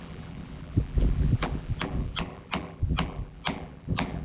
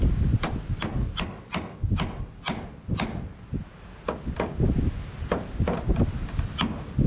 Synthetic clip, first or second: first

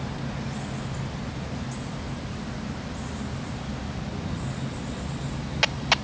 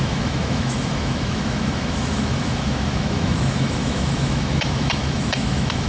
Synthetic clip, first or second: second